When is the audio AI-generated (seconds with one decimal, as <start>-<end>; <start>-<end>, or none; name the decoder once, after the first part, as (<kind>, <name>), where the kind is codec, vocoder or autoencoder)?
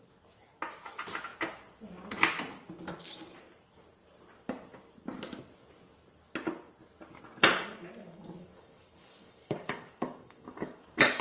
8.0-11.2 (codec, DAC)